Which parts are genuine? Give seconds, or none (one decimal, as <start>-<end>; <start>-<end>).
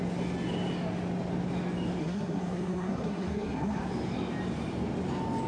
0.0-2.0; 3.8-5.5